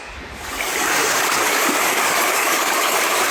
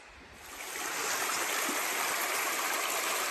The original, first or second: second